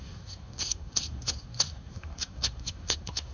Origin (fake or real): fake